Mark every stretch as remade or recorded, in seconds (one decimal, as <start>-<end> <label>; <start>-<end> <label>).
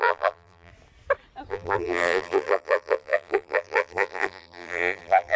0.0-0.7 remade; 0.7-1.5 recorded; 1.5-5.4 remade